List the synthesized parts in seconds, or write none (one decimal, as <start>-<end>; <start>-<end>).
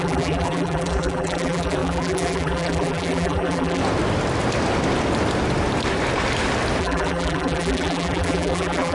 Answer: 0.0-3.8; 6.8-8.9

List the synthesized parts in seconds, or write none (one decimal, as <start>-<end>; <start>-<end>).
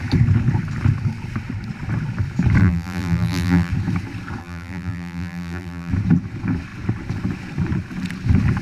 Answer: 2.6-3.7; 4.4-5.9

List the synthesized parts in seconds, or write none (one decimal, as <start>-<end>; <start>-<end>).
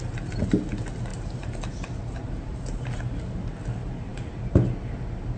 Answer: 1.1-3.0